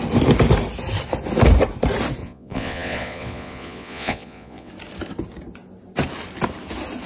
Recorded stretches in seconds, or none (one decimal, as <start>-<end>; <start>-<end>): 0.0-2.2; 4.7-7.1